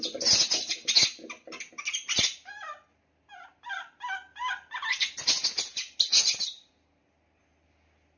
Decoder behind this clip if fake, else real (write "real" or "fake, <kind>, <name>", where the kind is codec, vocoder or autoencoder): real